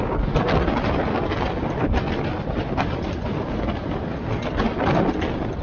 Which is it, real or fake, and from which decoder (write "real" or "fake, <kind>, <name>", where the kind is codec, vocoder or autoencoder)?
real